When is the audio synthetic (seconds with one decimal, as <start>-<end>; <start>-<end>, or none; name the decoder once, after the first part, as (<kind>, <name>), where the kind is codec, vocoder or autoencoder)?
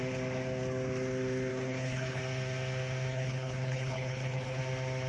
1.5-2.2 (codec, HILCodec); 3.1-4.6